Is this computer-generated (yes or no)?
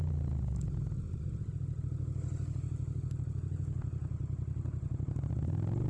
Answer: no